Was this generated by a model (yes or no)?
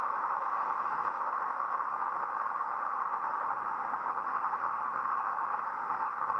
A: yes